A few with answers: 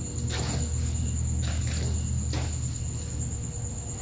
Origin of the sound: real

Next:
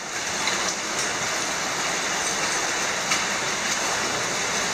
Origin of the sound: real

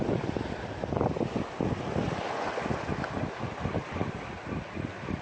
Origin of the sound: real